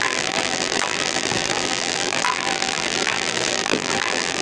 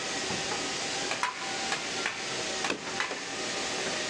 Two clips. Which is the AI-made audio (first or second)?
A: first